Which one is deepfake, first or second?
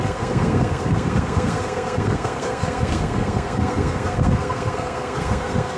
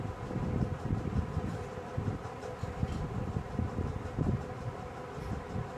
first